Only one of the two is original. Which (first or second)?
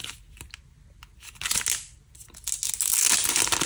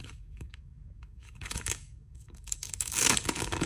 first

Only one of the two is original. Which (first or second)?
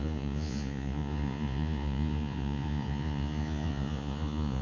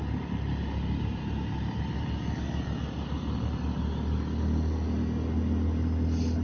second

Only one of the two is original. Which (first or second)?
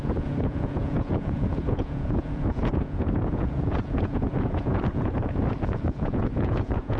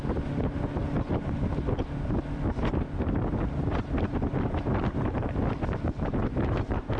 second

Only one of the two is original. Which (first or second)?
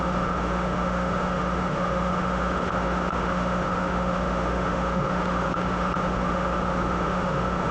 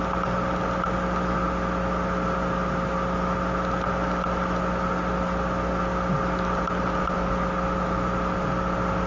second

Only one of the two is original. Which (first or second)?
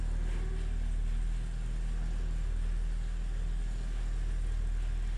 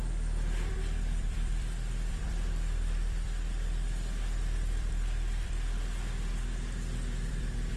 first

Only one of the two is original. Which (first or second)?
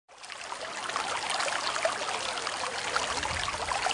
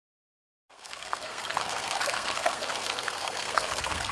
first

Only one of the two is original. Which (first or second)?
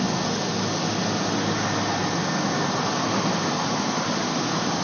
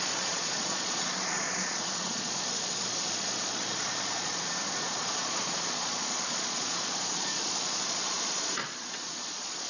first